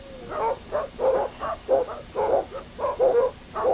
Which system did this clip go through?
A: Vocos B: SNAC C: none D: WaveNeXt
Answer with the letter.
C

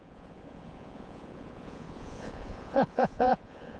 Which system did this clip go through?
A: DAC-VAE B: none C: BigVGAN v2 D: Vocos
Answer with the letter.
D